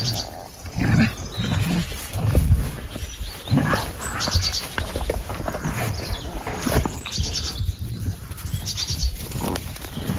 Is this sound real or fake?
real